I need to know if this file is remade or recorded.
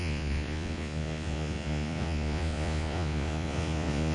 remade